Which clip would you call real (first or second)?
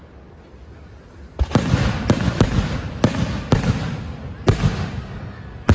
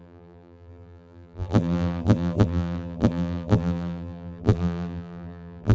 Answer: first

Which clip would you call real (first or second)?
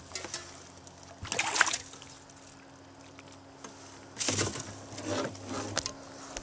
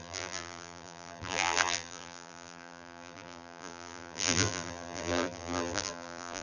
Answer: first